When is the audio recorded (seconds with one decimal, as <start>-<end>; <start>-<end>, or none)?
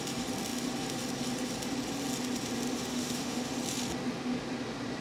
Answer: 0.0-2.9; 3.5-5.0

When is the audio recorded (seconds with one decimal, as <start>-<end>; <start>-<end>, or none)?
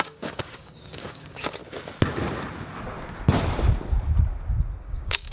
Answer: 1.6-4.8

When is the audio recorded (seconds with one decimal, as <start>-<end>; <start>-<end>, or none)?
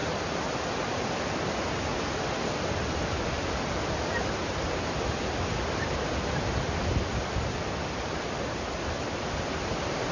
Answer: 0.0-10.1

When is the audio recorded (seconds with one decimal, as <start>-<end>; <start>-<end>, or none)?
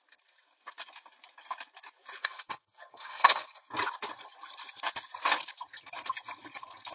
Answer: 0.0-2.2; 3.7-6.9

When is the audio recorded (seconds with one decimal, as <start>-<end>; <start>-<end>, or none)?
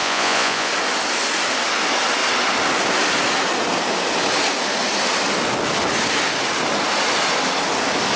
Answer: 0.7-8.2